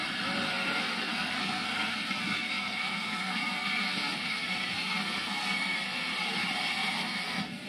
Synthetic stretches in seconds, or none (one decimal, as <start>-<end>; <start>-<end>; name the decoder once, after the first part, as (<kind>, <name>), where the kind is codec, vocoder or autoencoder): 0.5-6.1 (codec, SNAC); 6.7-7.7